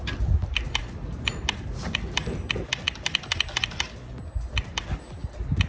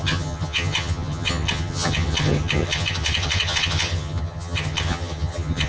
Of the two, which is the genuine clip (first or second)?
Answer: first